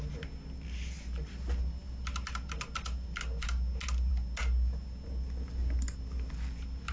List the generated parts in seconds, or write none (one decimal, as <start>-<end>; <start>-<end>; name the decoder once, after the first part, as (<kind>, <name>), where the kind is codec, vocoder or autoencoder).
none